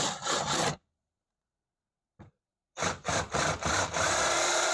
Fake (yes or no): yes